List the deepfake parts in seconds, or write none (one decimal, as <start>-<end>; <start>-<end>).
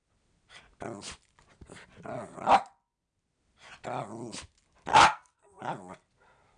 4.9-5.6